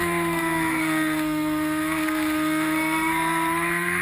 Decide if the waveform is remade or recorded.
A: remade